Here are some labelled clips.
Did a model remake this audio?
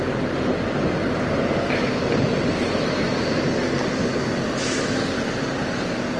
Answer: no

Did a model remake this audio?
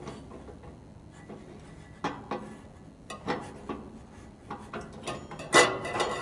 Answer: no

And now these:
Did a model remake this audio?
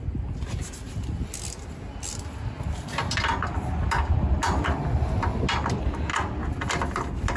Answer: no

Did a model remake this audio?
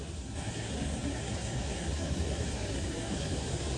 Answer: yes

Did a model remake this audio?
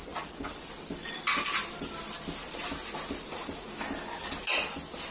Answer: no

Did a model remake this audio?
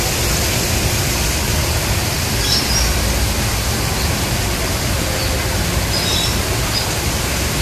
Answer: no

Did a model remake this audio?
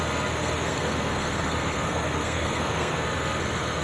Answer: yes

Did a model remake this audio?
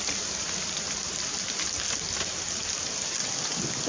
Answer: no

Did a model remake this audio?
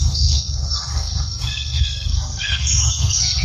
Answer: yes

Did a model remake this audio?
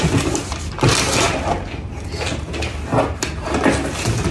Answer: no